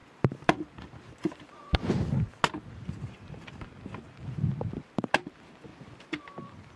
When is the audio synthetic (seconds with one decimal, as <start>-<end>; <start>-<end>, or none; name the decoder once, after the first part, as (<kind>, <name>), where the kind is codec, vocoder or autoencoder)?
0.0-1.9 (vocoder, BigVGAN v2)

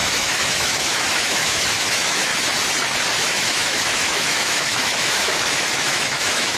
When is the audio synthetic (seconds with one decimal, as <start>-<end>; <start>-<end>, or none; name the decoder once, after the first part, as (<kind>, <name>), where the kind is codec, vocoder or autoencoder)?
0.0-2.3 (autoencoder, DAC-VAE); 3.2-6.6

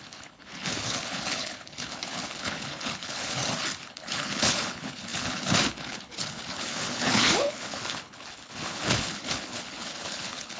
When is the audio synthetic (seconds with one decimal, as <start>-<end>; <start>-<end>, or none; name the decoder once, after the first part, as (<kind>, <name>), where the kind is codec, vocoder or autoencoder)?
0.0-3.4 (codec, HILCodec); 3.9-10.6

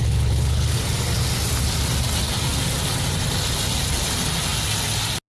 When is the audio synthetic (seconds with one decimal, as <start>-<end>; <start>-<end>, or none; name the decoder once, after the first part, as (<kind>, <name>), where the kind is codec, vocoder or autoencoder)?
0.0-0.8 (codec, HILCodec)